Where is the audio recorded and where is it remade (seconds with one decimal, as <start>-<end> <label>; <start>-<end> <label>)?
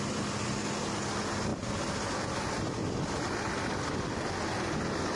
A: 0.0-5.2 recorded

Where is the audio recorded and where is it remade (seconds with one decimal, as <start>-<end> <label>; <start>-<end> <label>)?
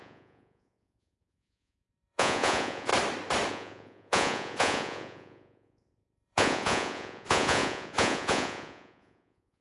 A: 0.0-2.9 remade; 2.9-3.5 recorded; 3.5-9.6 remade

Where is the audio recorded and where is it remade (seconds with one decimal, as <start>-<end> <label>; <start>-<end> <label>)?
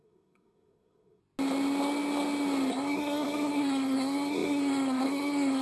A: 0.0-1.2 remade; 1.2-2.7 recorded; 2.7-5.6 remade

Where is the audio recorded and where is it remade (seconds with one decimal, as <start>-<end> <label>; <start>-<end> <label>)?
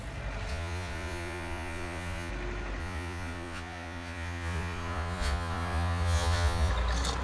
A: 0.0-0.5 recorded; 0.5-2.3 remade; 2.3-2.8 recorded; 2.8-6.7 remade; 6.7-7.2 recorded